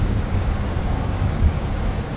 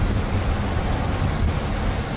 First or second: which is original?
second